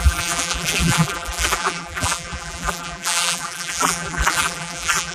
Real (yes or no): no